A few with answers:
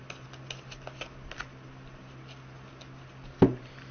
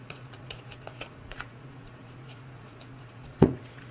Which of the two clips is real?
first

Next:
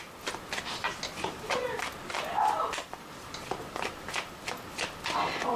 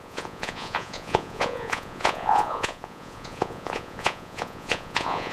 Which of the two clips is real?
first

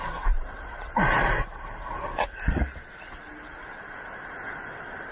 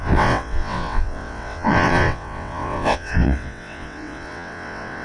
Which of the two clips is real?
first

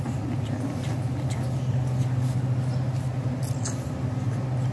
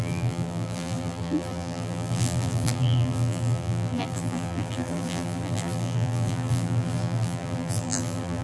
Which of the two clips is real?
first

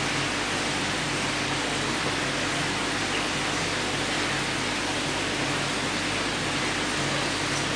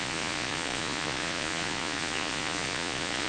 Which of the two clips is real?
first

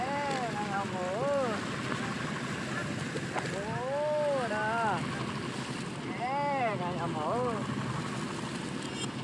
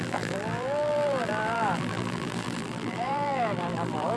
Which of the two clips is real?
first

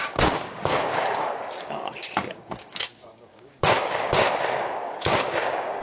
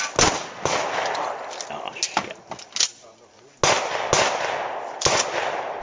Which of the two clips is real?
second